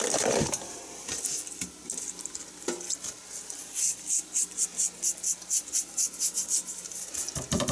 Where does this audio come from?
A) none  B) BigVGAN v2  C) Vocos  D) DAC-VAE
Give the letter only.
A